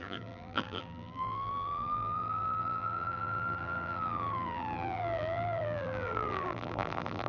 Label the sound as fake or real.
fake